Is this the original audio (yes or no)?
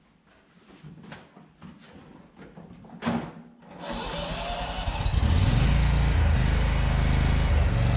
yes